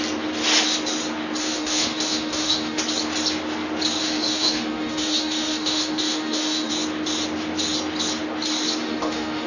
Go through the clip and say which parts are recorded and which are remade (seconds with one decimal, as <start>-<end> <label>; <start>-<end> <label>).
0.0-1.4 recorded; 1.4-2.8 remade; 2.8-4.0 recorded; 4.0-6.7 remade; 6.7-8.8 recorded; 8.8-9.5 remade